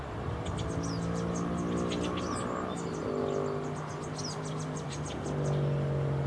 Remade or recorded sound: recorded